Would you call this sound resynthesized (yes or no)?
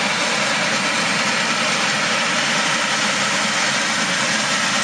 no